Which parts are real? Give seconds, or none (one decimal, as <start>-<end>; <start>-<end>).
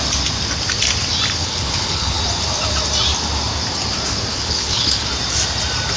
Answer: 0.0-1.4; 2.2-4.3; 5.1-6.0